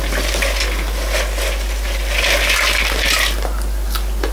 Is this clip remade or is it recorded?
recorded